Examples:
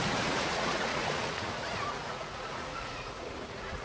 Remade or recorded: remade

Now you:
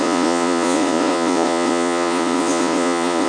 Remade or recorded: remade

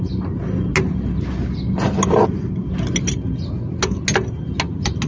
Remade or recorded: recorded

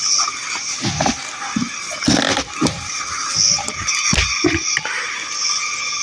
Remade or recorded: recorded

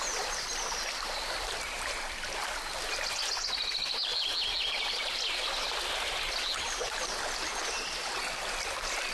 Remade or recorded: recorded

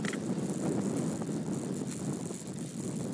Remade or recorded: recorded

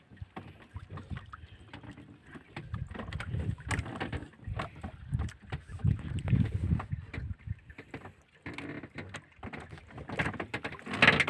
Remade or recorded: recorded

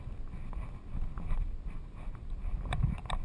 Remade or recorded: recorded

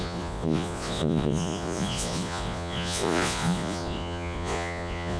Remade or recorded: remade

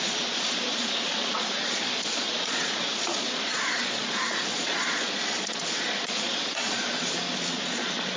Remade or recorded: remade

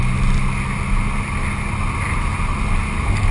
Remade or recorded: recorded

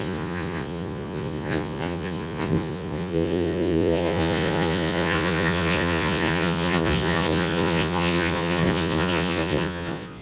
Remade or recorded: remade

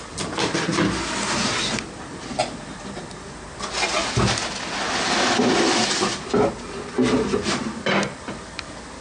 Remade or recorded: recorded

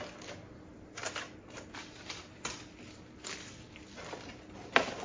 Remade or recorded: recorded